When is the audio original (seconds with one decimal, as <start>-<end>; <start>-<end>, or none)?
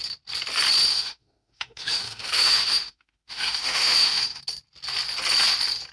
0.0-0.9; 4.4-5.9